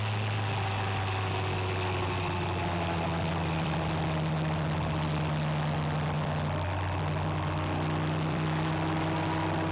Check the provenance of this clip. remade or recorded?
remade